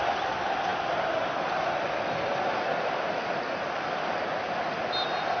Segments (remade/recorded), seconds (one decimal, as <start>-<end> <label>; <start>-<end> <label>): 0.0-5.4 recorded